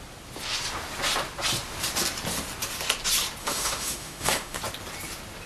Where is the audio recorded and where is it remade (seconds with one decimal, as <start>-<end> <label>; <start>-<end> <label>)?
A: 0.0-3.4 recorded; 3.4-4.6 remade; 4.6-5.5 recorded